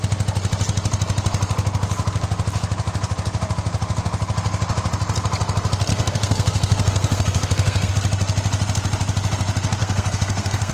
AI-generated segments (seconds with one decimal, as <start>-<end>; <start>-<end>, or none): 5.9-7.9; 9.8-10.7